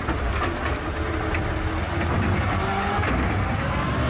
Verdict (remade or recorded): recorded